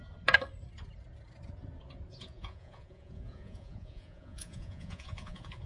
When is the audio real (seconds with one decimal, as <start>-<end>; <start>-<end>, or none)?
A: 0.0-2.1